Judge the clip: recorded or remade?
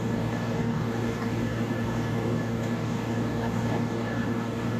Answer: remade